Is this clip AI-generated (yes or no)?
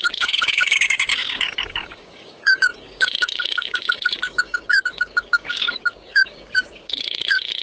yes